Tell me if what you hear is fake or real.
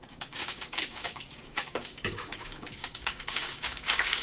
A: fake